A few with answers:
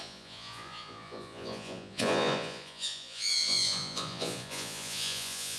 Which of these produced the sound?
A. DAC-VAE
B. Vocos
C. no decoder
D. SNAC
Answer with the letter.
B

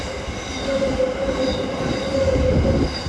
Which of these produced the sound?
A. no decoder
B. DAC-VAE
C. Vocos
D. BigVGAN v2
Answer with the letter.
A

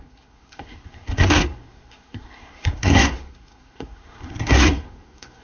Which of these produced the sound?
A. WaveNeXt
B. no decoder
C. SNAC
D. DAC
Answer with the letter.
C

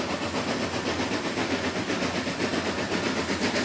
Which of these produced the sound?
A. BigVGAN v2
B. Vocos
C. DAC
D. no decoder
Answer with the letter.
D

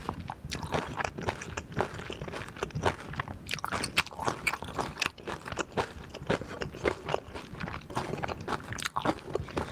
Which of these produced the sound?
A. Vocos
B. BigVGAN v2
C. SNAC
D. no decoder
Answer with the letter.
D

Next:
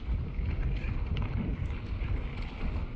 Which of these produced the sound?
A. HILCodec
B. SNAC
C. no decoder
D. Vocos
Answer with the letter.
C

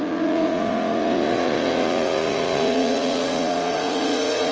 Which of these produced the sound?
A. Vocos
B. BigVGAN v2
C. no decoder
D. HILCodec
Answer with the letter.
A